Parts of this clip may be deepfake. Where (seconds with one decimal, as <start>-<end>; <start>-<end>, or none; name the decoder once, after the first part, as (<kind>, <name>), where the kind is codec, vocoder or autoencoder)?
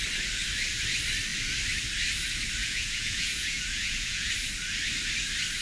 2.6-4.3 (vocoder, Vocos)